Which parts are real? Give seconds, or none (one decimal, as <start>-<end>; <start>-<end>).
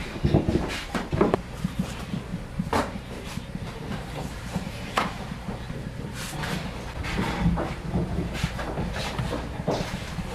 0.0-2.3; 5.2-10.3